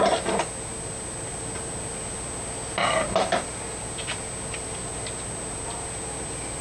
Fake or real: real